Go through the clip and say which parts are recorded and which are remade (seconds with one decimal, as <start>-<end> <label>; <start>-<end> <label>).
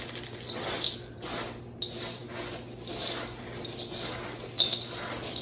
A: 0.0-5.4 recorded